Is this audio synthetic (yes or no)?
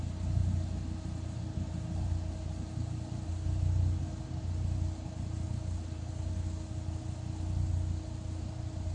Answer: no